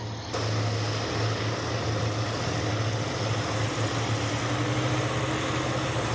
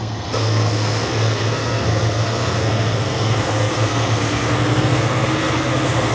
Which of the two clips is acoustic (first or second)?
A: first